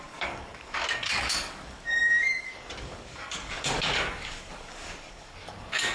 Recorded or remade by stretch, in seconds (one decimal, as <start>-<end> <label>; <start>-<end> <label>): 0.0-5.9 remade